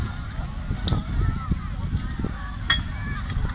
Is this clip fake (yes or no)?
no